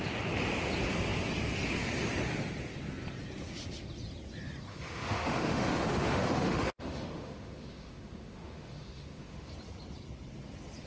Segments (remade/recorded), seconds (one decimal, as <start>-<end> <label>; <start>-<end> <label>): 0.0-4.7 recorded; 4.7-9.5 remade; 9.5-10.9 recorded